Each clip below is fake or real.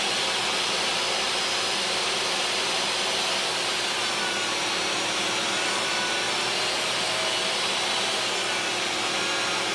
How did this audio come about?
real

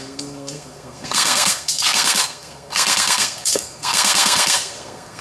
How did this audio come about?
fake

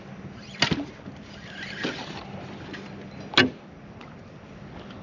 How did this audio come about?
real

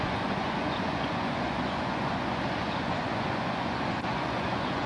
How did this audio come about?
fake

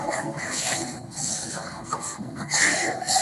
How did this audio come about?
fake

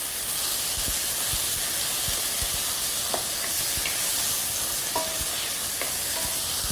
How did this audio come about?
real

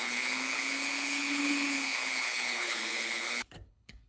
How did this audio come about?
fake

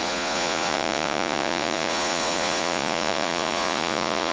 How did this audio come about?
fake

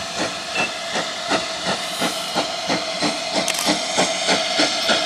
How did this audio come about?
real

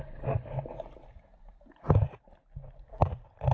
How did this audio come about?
real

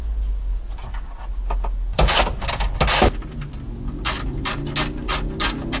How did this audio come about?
real